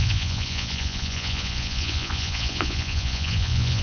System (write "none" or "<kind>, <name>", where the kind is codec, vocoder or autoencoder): vocoder, Vocos